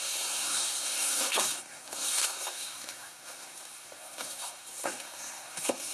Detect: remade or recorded remade